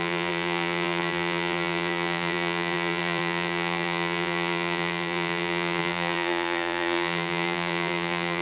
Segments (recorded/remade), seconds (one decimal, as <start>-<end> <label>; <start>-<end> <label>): 0.0-8.4 remade